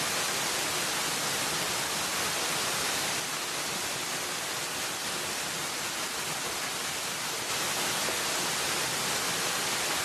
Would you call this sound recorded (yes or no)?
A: yes